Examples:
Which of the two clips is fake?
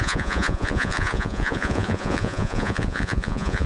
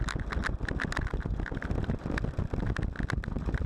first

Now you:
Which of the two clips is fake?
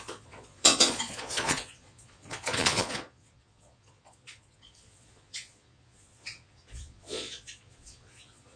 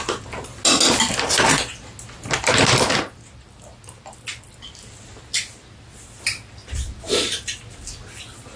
first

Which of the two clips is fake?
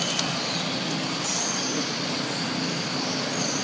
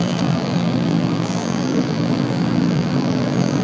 second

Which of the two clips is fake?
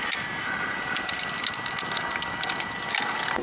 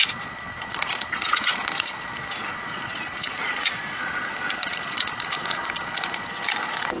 second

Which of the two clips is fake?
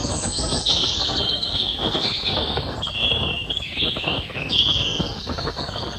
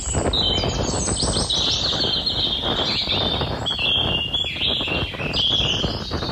first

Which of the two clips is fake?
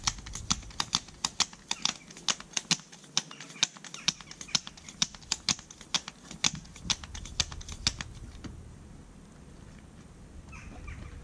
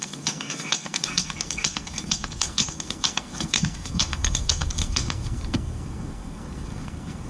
second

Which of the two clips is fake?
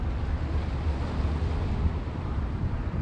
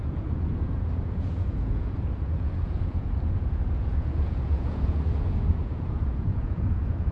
second